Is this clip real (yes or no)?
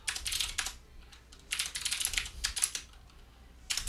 yes